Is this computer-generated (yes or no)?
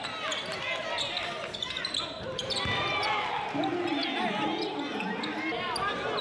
no